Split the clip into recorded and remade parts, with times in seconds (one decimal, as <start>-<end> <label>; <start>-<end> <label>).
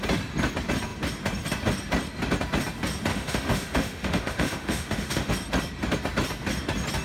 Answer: 0.0-3.1 recorded; 3.1-5.3 remade; 5.3-7.0 recorded